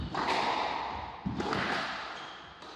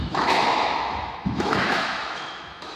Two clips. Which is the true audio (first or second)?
first